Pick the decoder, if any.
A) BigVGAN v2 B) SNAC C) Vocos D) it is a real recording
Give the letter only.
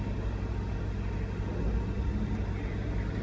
D